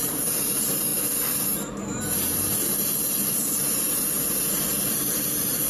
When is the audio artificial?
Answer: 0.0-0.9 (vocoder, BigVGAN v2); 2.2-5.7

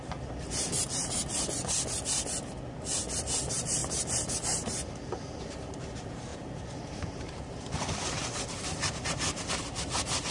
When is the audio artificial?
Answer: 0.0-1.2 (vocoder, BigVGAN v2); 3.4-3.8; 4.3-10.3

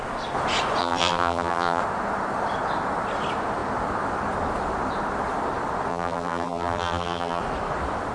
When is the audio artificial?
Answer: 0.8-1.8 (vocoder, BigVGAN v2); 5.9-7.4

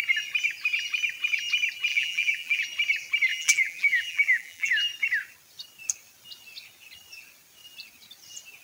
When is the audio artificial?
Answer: 1.9-2.6 (vocoder, BigVGAN v2); 3.3-4.7

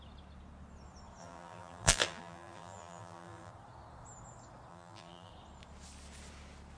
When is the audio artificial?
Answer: 1.2-3.5 (vocoder, BigVGAN v2); 4.7-5.3

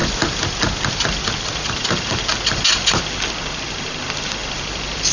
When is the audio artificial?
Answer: 0.0-3.0 (vocoder, BigVGAN v2); 4.4-5.1